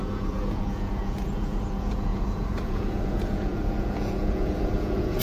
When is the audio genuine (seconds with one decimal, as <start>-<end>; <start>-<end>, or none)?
none